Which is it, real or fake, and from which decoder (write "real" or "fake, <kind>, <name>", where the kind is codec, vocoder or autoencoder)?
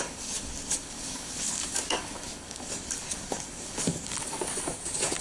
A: fake, codec, DAC